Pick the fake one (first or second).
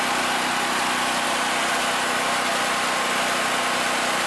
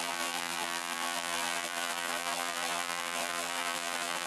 second